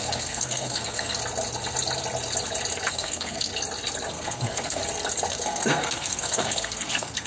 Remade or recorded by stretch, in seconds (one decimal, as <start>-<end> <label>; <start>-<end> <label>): 0.0-1.2 remade; 1.2-2.9 recorded; 2.9-3.5 remade; 3.5-4.1 recorded; 4.1-4.8 remade; 4.8-5.3 recorded; 5.3-7.3 remade